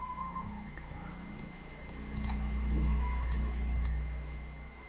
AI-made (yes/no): yes